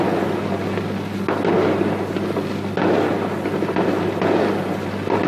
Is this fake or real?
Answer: real